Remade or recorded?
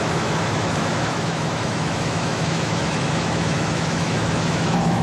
remade